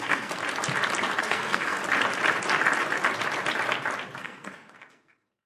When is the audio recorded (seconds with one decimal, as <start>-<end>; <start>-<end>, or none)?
0.4-1.2; 1.8-4.2